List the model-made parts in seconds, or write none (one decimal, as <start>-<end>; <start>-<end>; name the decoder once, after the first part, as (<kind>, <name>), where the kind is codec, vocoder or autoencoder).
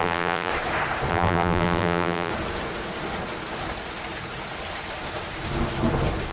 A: 0.0-0.5 (vocoder, BigVGAN v2); 1.1-2.3